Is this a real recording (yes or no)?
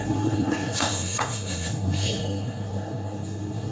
no